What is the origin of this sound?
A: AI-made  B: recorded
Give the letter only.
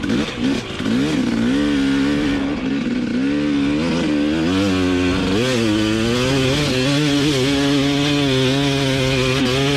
B